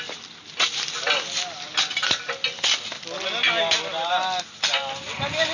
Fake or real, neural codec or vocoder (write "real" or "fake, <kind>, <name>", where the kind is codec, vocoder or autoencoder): real